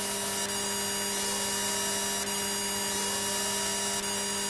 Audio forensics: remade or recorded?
recorded